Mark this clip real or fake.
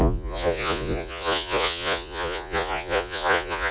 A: fake